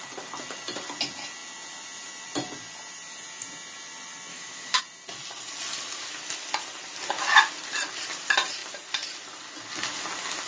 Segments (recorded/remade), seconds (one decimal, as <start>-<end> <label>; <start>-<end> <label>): 0.0-4.3 recorded; 4.3-4.8 remade; 4.8-10.5 recorded